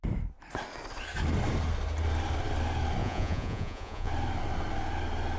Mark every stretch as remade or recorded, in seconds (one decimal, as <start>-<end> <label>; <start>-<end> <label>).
0.0-3.0 recorded; 3.0-4.1 remade; 4.1-5.4 recorded